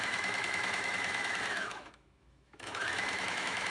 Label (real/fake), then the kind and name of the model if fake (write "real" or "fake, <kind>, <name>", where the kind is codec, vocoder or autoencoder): fake, autoencoder, DAC-VAE